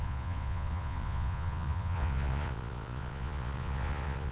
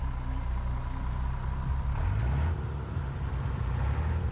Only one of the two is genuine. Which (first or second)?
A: second